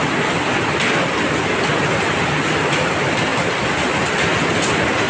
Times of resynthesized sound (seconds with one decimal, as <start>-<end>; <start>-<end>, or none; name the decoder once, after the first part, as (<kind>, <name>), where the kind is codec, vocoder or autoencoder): none